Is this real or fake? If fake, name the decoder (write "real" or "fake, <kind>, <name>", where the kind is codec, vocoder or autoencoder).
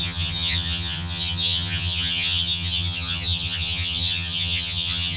fake, vocoder, HiFi-GAN